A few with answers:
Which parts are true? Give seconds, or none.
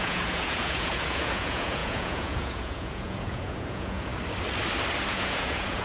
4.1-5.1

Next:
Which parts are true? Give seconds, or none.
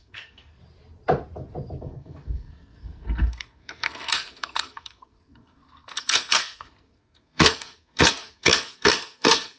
0.6-1.8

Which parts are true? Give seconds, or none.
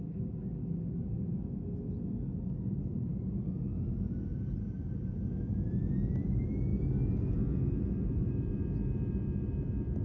0.0-10.0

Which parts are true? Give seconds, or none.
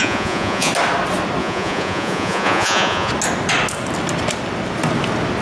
0.7-1.4; 3.1-5.4